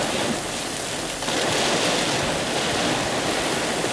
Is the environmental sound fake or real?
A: real